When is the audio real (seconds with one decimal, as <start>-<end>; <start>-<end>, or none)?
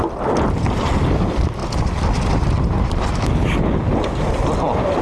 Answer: 0.0-5.0